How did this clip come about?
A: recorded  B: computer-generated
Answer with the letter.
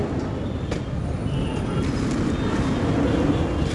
A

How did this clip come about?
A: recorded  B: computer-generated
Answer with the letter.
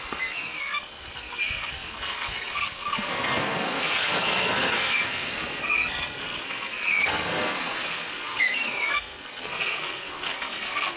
B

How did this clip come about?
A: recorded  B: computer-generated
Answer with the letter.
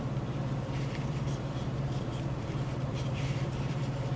B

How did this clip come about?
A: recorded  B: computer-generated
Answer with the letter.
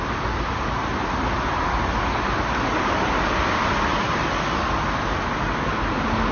A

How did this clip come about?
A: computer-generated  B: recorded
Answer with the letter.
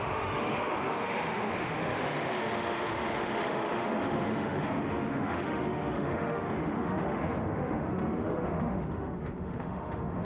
A